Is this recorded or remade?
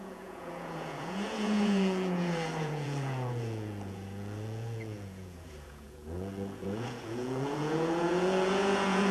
remade